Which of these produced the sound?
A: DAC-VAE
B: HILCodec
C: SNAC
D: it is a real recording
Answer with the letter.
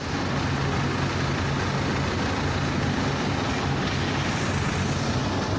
D